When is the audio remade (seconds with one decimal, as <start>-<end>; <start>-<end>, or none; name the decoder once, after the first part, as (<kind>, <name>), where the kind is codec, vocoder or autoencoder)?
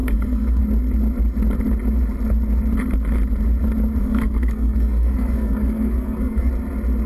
0.0-0.6 (codec, SNAC); 4.0-6.5